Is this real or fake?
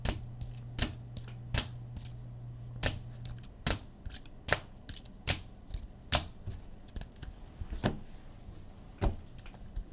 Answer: real